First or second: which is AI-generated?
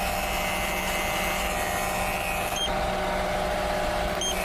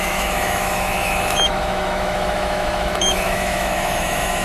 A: second